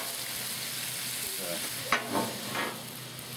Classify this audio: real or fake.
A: real